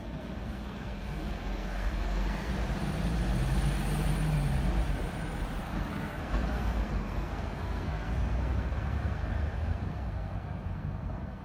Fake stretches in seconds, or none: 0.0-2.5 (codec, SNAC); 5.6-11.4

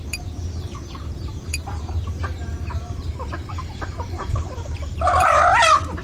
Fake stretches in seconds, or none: 0.0-3.1 (vocoder, BigVGAN v2); 3.5-5.3

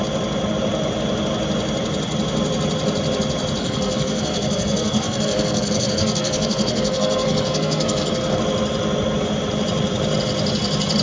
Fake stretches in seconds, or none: 3.6-8.4 (codec, SNAC)